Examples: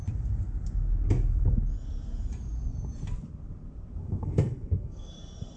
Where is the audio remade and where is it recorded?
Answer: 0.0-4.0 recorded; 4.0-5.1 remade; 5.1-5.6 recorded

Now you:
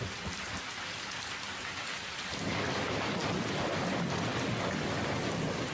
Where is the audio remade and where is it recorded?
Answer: 0.0-5.7 recorded

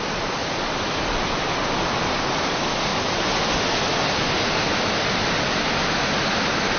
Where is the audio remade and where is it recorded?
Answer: 0.0-6.8 recorded

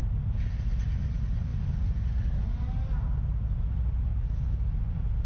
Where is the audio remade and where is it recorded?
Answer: 0.0-5.3 recorded

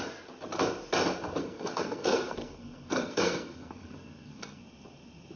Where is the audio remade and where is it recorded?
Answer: 0.0-1.4 recorded; 1.4-4.6 remade; 4.6-5.4 recorded